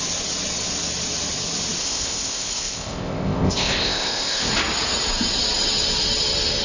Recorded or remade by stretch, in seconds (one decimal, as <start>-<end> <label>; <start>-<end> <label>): 0.0-1.8 recorded; 1.8-4.5 remade; 4.5-6.6 recorded